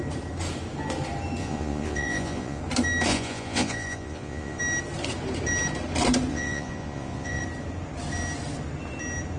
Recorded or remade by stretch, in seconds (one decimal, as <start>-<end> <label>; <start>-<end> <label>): 0.0-1.4 recorded; 1.4-2.6 remade; 2.6-3.1 recorded; 3.1-4.6 remade; 4.6-6.3 recorded; 6.3-7.4 remade; 7.4-9.4 recorded